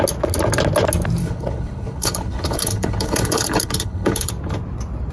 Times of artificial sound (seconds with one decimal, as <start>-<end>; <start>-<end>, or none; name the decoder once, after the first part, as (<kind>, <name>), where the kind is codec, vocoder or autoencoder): 1.2-4.3 (codec, HILCodec)